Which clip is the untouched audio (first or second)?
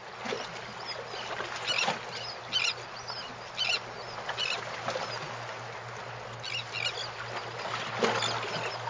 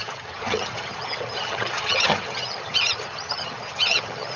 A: first